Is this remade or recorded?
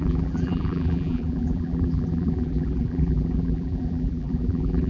remade